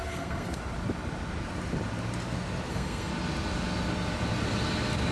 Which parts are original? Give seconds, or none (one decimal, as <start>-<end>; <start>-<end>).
0.6-2.7; 3.1-5.1